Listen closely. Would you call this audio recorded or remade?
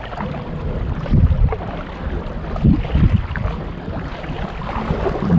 recorded